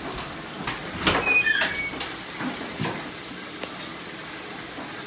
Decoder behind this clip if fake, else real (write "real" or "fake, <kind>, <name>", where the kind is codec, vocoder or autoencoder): real